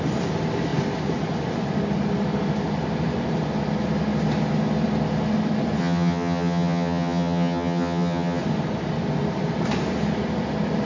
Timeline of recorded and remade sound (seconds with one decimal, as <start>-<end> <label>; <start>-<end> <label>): 0.0-5.8 recorded; 5.8-8.4 remade; 8.4-10.9 recorded